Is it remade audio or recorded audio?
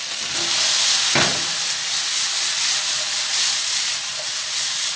recorded